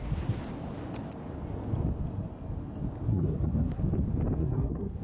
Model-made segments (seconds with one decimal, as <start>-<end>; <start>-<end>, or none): 0.0-0.4; 3.1-3.8; 4.4-5.0

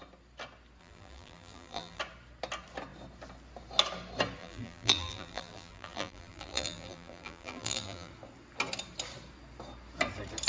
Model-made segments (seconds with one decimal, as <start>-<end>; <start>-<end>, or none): 0.8-2.0; 4.4-8.1